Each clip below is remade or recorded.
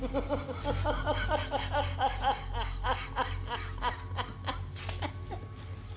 recorded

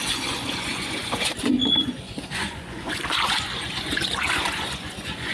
remade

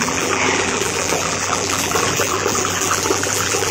remade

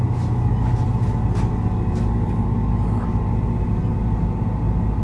recorded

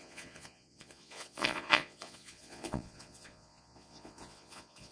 remade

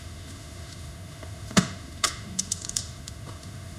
remade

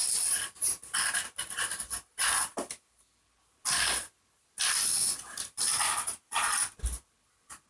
recorded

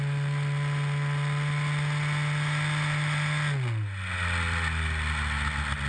recorded